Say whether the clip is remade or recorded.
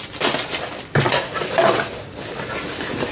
recorded